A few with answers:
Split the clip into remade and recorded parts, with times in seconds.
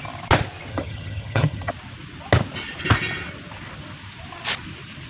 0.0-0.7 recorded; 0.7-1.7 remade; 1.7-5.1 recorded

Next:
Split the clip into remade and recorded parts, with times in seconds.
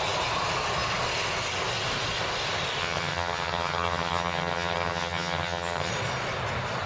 0.0-2.8 recorded; 2.8-5.9 remade; 5.9-6.9 recorded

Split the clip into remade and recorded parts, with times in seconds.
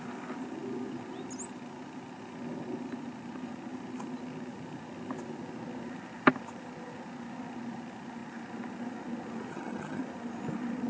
0.0-9.5 recorded; 9.5-10.0 remade; 10.0-10.9 recorded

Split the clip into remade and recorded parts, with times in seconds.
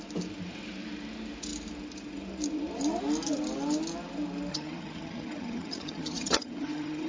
0.0-4.5 recorded; 4.5-7.1 remade